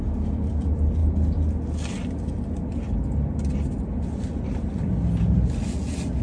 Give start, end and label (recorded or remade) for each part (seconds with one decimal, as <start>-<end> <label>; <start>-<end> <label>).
0.0-6.2 recorded